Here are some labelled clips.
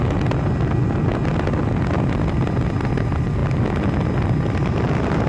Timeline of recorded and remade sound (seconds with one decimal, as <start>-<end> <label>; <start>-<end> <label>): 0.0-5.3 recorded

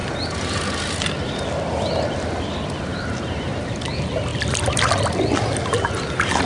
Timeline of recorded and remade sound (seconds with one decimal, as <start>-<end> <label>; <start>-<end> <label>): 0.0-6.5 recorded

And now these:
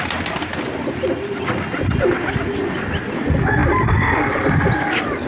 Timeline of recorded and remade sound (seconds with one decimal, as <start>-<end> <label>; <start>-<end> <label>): 0.0-5.3 recorded